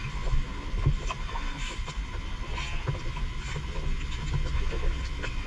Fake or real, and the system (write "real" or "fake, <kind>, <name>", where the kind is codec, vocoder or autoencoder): real